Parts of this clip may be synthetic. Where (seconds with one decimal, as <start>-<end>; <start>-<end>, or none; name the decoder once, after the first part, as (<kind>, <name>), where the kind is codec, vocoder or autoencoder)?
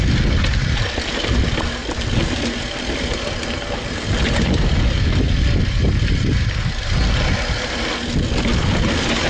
none